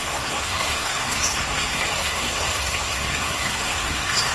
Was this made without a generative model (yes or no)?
no